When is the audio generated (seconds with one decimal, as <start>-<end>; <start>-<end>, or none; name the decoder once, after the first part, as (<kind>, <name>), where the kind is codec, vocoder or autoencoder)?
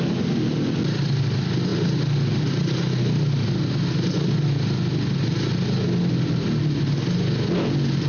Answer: none